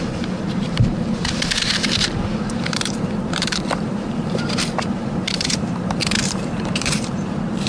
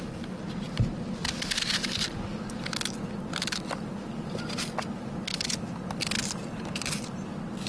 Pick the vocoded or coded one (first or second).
first